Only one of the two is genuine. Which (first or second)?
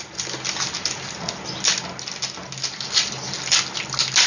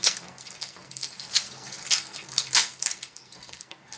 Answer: first